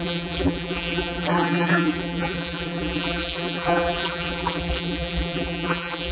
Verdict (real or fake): fake